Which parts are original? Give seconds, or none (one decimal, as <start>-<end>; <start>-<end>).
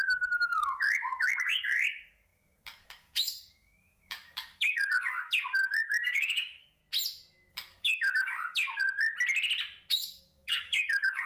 6.8-7.5; 8.8-9.9